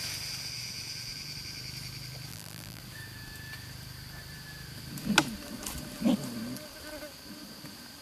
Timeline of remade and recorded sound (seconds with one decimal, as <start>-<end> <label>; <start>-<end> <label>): 0.0-2.3 recorded; 2.3-2.8 remade; 2.8-8.0 recorded